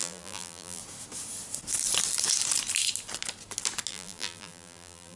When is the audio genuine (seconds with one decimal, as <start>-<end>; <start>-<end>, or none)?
0.8-3.9